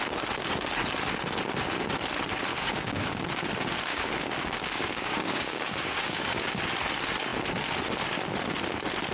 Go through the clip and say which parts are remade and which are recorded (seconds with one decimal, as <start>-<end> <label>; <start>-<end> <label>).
0.0-2.5 recorded; 2.5-3.2 remade; 3.2-3.9 recorded; 3.9-6.6 remade; 6.6-9.1 recorded